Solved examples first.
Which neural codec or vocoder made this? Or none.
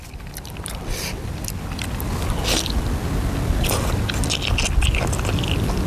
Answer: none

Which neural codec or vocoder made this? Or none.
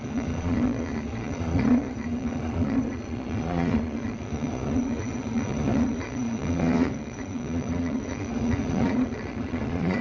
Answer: vocoder, Vocos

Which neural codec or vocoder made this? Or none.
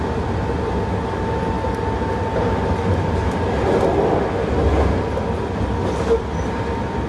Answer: none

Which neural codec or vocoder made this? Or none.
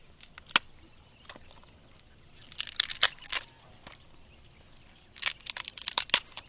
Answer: none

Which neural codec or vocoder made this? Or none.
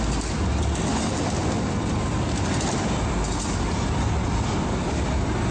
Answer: none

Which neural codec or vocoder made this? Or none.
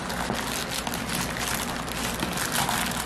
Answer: none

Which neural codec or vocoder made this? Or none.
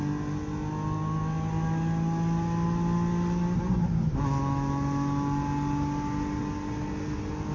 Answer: none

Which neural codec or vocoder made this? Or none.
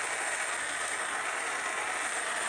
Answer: none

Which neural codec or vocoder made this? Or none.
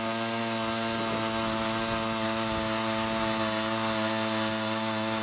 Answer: none